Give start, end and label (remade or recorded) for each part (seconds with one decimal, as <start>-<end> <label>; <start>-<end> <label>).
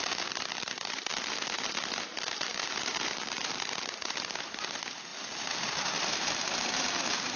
0.0-7.4 remade